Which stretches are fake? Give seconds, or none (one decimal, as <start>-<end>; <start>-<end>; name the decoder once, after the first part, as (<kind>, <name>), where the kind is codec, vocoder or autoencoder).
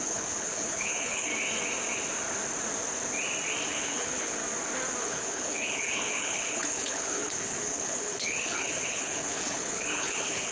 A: 0.0-1.3 (codec, HILCodec); 3.7-4.4; 5.0-10.5